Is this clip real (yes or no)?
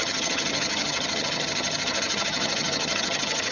no